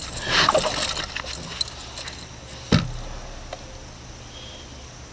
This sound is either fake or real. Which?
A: real